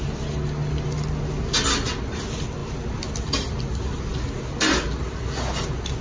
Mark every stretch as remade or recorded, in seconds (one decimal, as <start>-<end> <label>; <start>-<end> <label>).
0.0-6.0 recorded